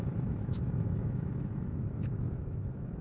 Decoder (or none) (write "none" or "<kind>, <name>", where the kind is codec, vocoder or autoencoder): autoencoder, DAC-VAE